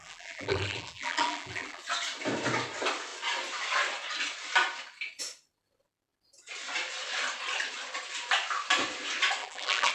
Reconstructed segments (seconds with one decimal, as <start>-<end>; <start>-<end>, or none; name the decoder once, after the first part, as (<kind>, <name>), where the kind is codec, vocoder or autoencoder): 0.0-1.8 (vocoder, BigVGAN v2); 9.4-9.9